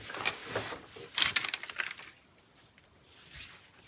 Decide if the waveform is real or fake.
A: real